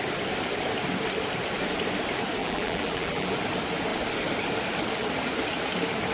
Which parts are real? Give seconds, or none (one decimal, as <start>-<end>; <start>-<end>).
0.0-2.4; 3.4-6.1